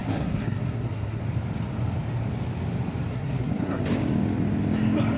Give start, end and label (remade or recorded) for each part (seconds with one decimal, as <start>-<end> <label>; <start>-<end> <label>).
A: 0.0-1.2 remade; 1.2-3.1 recorded; 3.1-3.8 remade; 3.8-5.2 recorded